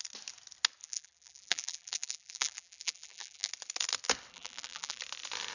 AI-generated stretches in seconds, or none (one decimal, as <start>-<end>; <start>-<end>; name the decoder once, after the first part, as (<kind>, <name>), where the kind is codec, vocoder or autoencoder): 0.8-3.5 (vocoder, BigVGAN v2); 4.3-5.0